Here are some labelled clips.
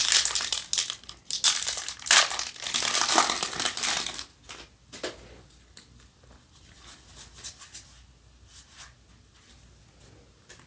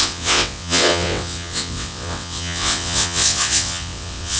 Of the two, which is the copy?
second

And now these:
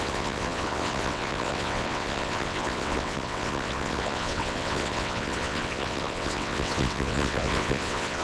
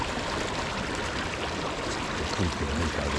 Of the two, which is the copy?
first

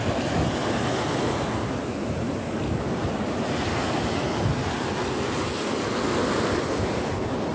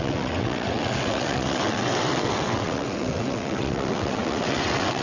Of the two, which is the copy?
second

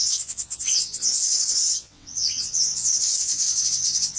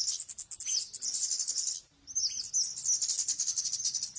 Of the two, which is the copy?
first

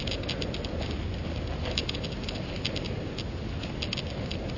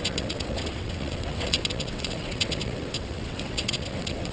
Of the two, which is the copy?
second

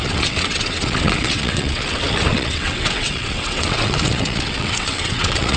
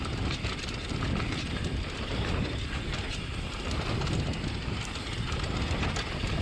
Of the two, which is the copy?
first